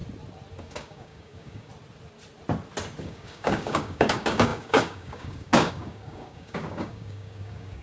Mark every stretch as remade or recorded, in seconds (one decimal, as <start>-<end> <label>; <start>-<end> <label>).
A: 0.0-0.6 recorded; 0.6-1.7 remade; 1.7-3.0 recorded; 3.0-7.8 remade